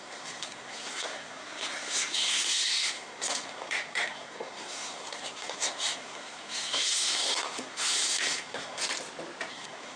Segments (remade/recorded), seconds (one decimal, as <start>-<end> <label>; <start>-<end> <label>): 0.0-8.8 remade; 8.8-9.5 recorded; 9.5-10.0 remade